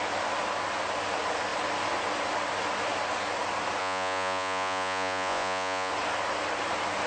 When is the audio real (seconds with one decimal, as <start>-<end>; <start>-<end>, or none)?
0.0-3.8; 5.9-7.1